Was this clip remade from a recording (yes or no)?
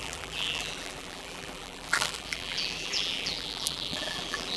yes